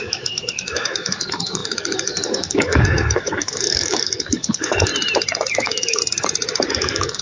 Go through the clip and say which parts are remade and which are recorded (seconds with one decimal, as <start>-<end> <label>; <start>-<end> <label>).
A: 0.0-4.9 remade; 4.9-5.5 recorded; 5.5-6.0 remade; 6.0-6.7 recorded; 6.7-7.2 remade